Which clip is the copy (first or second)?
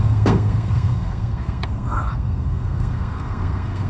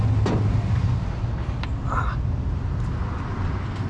first